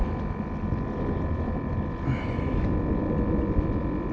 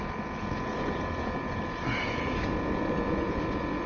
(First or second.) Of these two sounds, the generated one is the second